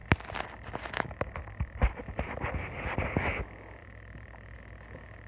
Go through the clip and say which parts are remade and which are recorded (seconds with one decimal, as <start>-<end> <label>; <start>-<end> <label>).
0.0-0.9 recorded; 0.9-2.0 remade; 2.0-3.3 recorded; 3.3-5.3 remade